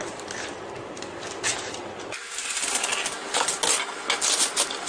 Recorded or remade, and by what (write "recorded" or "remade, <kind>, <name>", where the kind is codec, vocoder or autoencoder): recorded